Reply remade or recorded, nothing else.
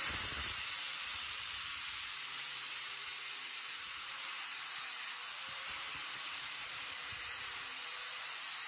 remade